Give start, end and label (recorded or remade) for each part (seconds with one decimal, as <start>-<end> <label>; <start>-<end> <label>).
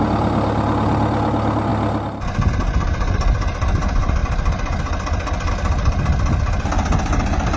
0.0-7.6 recorded